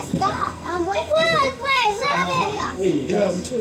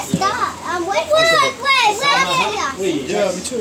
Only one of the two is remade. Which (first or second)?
first